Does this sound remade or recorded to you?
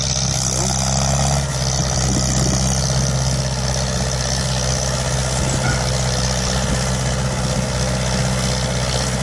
recorded